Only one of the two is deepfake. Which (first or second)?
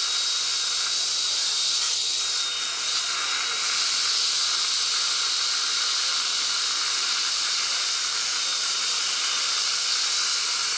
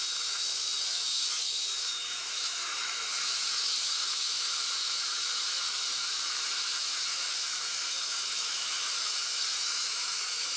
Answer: second